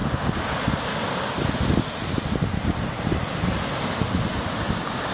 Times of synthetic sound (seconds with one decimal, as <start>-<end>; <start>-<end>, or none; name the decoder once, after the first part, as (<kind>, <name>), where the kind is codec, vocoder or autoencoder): none